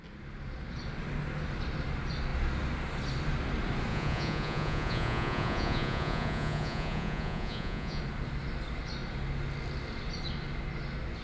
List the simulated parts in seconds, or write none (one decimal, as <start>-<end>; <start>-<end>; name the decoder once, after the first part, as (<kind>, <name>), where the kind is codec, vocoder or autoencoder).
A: 3.9-8.0 (vocoder, Vocos)